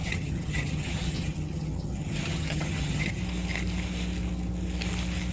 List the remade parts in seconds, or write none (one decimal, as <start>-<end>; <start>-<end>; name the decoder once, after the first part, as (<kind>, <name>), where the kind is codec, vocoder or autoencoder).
0.0-3.2 (vocoder, HiFi-GAN)

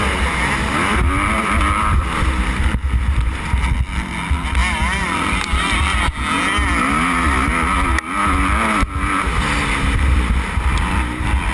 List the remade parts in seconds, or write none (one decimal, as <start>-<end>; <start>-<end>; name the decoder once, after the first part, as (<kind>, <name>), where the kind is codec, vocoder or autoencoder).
none

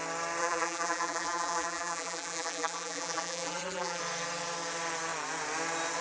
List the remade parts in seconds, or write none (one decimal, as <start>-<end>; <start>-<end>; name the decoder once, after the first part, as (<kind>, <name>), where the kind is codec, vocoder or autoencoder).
0.4-4.0 (vocoder, BigVGAN v2)